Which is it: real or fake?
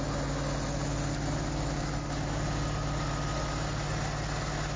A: real